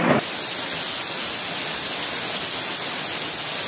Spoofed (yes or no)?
no